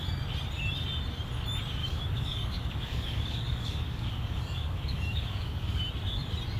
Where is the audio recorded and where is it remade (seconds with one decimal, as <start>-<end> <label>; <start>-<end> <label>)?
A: 0.0-1.8 recorded; 1.8-5.8 remade; 5.8-6.6 recorded